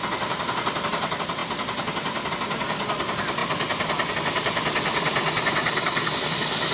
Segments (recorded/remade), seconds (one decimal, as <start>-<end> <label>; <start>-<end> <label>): 0.0-6.7 recorded

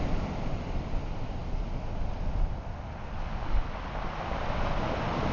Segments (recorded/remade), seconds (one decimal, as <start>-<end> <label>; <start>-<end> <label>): 0.0-5.3 recorded